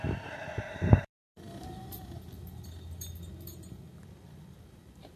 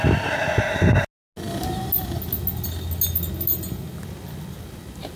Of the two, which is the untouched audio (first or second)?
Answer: second